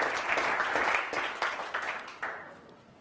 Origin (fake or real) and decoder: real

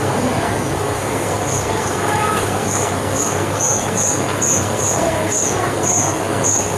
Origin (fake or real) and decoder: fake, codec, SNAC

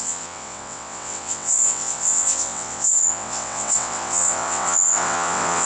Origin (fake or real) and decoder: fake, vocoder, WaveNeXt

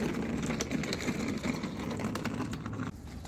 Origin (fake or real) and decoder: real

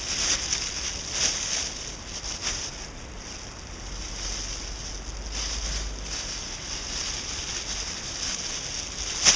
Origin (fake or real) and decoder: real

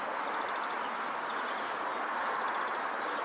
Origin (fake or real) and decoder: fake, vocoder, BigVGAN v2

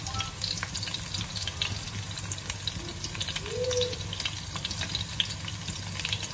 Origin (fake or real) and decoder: real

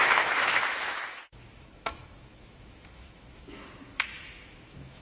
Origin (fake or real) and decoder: fake, autoencoder, DAC-VAE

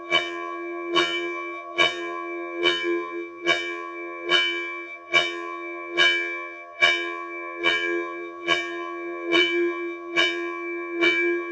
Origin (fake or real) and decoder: fake, vocoder, HiFi-GAN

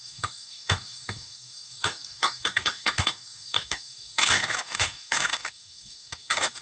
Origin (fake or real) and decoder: fake, codec, DAC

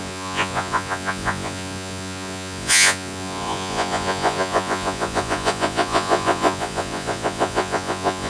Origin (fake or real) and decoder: fake, vocoder, Vocos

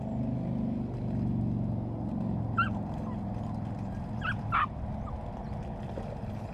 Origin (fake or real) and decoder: real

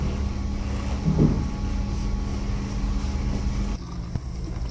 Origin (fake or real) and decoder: real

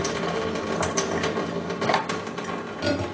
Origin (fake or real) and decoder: real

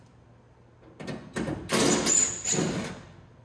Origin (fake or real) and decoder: real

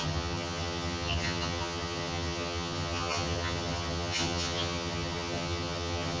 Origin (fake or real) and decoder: fake, vocoder, HiFi-GAN